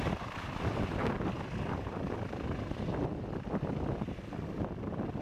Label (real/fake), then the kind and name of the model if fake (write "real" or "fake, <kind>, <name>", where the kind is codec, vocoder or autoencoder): real